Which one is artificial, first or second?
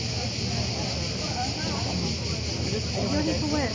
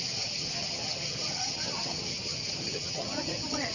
second